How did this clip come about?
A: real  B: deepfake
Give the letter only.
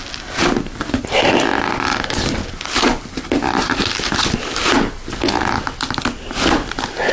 A